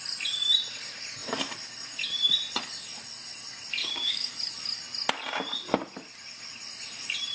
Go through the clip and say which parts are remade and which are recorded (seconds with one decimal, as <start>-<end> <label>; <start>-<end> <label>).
0.0-3.8 recorded; 3.8-4.3 remade; 4.3-7.3 recorded